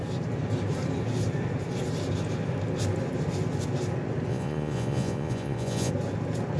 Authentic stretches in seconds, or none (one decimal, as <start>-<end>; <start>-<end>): 0.0-4.3; 5.9-6.6